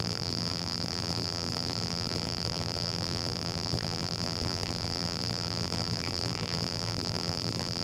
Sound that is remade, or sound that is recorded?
remade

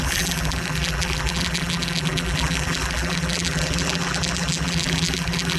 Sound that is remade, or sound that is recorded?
remade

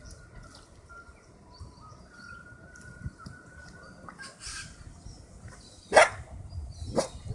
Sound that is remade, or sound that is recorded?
recorded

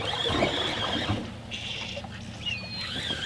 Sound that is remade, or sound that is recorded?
recorded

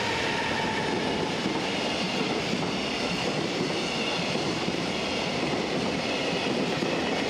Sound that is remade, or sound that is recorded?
recorded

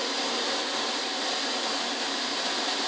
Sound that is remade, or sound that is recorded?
recorded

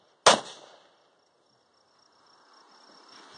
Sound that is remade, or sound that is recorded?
recorded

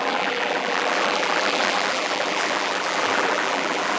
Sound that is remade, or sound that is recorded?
remade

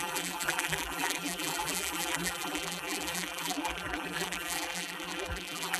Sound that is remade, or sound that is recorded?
remade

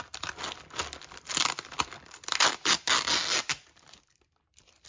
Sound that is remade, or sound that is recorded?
recorded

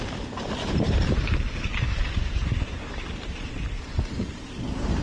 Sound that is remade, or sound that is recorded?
remade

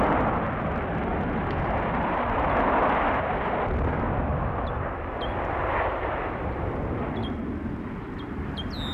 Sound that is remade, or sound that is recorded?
recorded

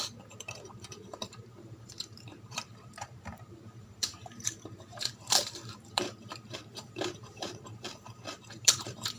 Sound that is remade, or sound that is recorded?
remade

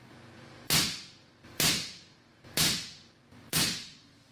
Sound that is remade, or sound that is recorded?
remade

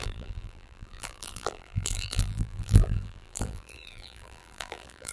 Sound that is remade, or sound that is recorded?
remade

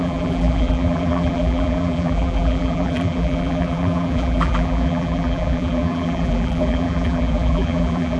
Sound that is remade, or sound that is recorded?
remade